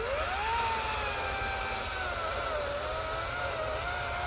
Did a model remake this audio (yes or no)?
no